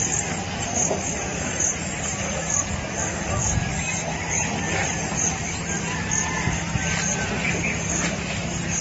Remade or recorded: recorded